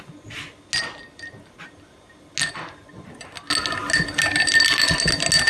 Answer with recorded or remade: recorded